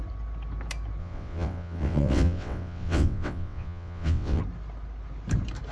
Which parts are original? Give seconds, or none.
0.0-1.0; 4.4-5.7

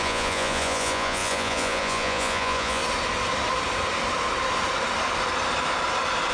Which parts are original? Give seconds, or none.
2.8-6.3

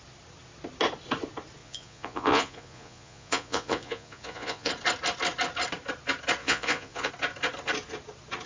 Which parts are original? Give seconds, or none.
0.0-1.6; 4.7-6.4; 7.1-8.5

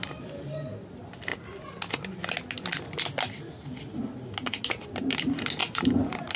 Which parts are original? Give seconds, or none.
0.0-5.6

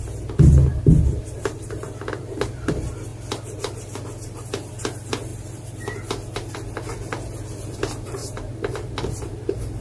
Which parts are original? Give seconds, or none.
0.0-0.7; 2.7-5.3; 6.0-9.8

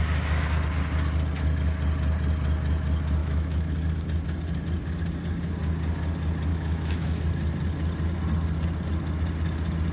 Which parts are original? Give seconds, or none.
0.0-3.2; 3.7-6.5; 7.2-9.9

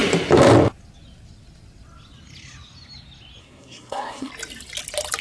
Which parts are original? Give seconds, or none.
0.0-3.4; 4.3-5.2